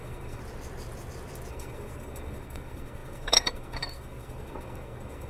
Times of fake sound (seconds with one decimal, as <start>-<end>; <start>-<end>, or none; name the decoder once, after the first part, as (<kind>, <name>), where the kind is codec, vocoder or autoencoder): 0.0-0.4 (codec, SNAC); 1.5-5.3